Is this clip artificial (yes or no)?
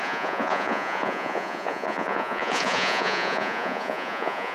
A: yes